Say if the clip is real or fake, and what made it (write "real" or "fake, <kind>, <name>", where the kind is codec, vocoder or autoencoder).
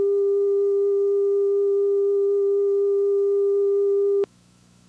fake, autoencoder, DAC-VAE